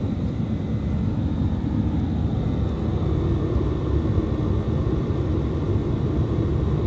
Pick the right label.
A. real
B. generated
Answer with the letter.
A